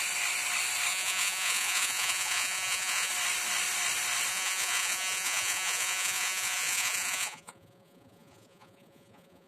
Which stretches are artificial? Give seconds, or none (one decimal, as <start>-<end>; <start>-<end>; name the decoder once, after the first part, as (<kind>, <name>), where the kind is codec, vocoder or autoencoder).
0.9-3.1 (vocoder, Vocos); 4.3-9.5